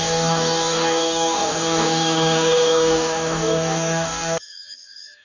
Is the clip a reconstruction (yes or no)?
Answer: yes